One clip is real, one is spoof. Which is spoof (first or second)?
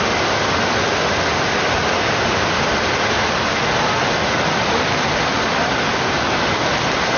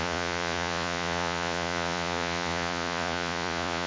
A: second